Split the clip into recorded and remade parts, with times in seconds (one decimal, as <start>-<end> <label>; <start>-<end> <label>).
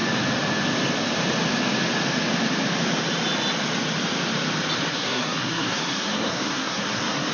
0.0-4.9 recorded; 4.9-7.3 remade